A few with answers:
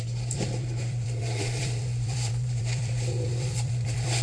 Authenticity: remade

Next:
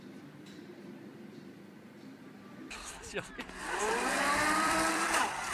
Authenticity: remade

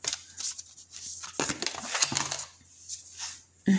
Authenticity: recorded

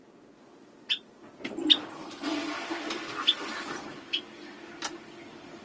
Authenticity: recorded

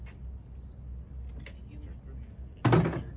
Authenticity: recorded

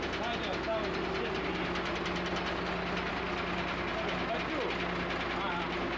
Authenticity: recorded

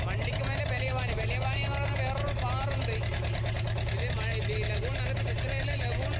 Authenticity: recorded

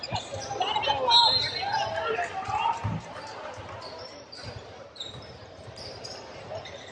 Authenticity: remade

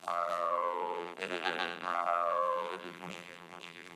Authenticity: remade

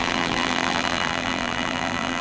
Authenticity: remade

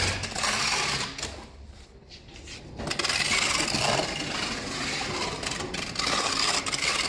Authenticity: recorded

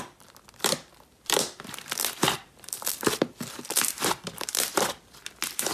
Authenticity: remade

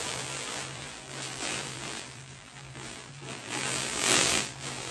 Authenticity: remade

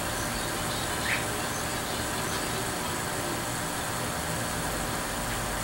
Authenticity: recorded